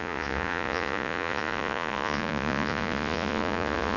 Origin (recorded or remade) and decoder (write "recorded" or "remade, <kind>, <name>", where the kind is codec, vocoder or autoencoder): remade, vocoder, Vocos